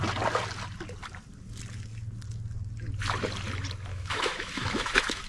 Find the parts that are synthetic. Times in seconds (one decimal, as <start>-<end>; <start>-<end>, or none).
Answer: 3.9-5.3